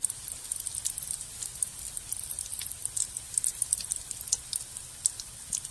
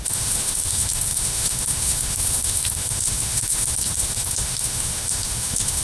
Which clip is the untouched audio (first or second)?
first